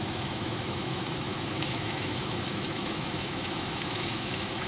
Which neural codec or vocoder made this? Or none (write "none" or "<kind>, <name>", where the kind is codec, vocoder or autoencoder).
autoencoder, DAC-VAE